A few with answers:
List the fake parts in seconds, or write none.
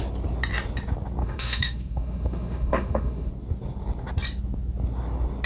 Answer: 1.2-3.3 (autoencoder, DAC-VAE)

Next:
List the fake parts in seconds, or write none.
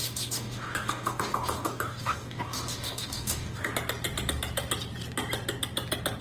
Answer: 0.0-3.7 (codec, DAC)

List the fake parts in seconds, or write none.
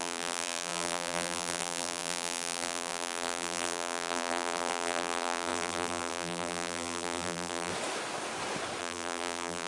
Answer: 0.0-7.7 (vocoder, BigVGAN v2); 8.8-9.7